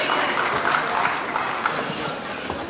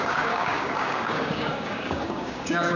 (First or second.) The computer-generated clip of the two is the second